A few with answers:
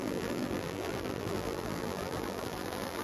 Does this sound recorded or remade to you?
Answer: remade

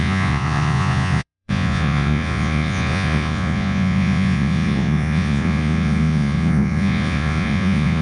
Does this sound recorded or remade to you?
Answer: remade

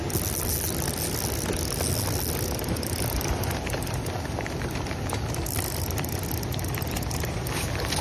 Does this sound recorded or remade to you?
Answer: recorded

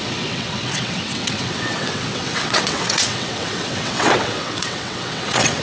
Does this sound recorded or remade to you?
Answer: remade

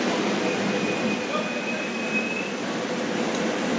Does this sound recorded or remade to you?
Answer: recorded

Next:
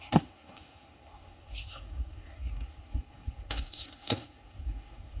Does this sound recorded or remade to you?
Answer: remade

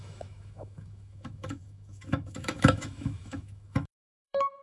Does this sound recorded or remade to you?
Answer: remade